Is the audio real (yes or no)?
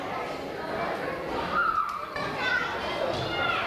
no